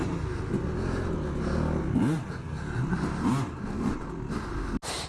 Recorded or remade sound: recorded